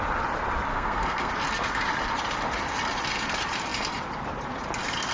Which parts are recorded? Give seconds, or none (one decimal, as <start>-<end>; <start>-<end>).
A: 0.0-0.7; 1.3-5.1